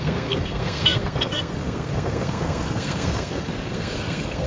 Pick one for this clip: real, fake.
fake